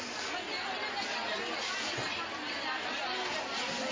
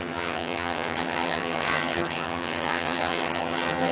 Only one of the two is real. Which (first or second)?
first